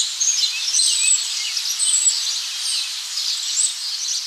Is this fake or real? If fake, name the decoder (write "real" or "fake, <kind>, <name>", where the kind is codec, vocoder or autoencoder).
real